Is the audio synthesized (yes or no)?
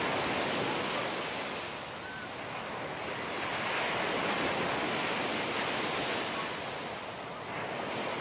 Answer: no